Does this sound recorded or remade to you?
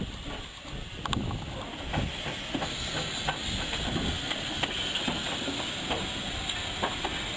recorded